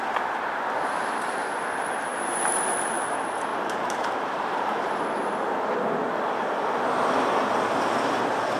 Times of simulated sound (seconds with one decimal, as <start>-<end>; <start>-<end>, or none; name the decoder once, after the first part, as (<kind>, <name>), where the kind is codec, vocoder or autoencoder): 3.5-4.8 (vocoder, BigVGAN v2)